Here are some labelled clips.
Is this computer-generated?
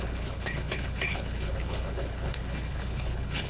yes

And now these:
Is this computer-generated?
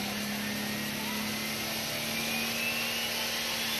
no